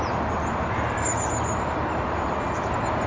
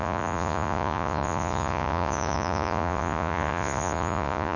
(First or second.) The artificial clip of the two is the second